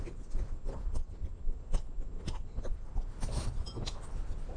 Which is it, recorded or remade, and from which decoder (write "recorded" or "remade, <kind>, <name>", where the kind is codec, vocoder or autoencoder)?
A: recorded